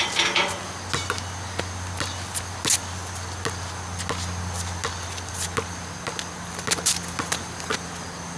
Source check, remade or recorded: recorded